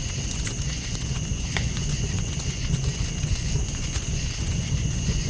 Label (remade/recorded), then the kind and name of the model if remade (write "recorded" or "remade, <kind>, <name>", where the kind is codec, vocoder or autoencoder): remade, vocoder, Vocos